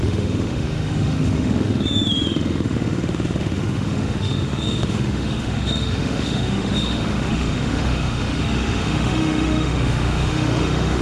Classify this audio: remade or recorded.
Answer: remade